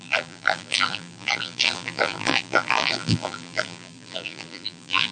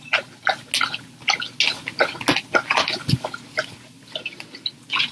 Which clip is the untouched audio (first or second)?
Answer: second